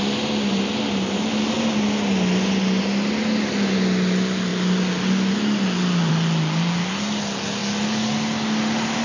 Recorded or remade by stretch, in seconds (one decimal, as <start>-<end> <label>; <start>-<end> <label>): 0.0-9.0 recorded